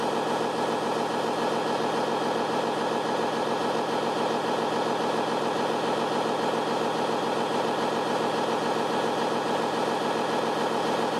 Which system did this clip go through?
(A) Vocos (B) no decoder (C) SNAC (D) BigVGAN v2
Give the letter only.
B